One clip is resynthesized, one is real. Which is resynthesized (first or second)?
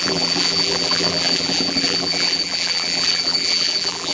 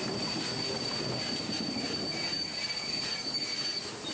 first